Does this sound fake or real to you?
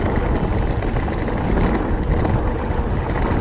real